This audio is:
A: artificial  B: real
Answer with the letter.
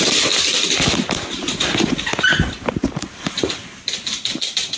B